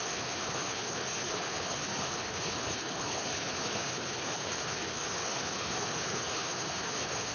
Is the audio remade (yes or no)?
yes